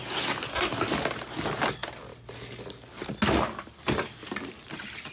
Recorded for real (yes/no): yes